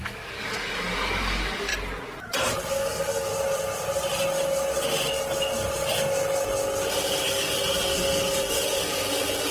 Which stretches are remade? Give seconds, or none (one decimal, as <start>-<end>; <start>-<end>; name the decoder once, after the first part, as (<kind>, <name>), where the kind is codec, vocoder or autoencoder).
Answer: 0.0-1.7 (codec, DAC); 2.7-3.3; 6.9-9.5